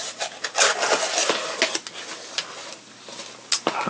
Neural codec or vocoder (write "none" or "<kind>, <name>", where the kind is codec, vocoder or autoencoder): none